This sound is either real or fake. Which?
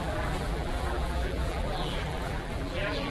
fake